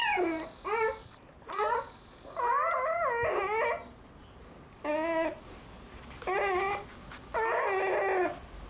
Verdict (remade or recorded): recorded